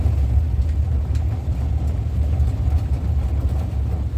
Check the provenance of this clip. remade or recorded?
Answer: recorded